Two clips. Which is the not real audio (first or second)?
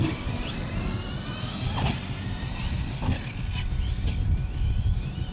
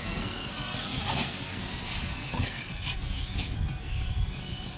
second